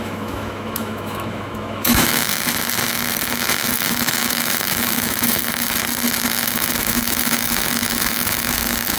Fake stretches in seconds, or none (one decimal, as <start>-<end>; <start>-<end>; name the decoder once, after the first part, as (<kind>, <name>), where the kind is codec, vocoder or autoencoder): 0.0-2.3 (autoencoder, DAC-VAE); 3.5-5.4; 6.3-9.0